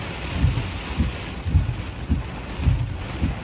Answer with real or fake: real